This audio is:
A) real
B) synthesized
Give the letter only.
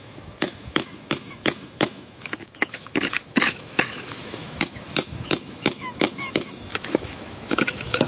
B